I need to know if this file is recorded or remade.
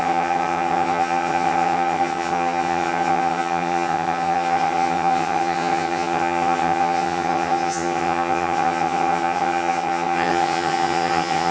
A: remade